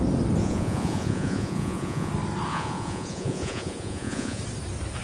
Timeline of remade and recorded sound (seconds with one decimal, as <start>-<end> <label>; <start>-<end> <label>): 0.0-0.4 recorded; 0.4-2.1 remade; 2.1-2.5 recorded; 2.5-4.4 remade; 4.4-5.0 recorded